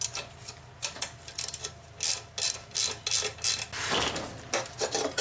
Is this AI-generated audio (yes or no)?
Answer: no